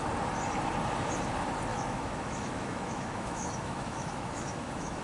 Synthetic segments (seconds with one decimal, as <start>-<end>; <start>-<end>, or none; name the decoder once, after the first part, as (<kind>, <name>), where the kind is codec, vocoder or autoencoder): 1.7-5.0 (autoencoder, DAC-VAE)